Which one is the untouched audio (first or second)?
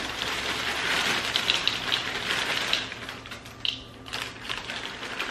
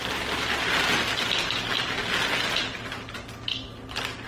second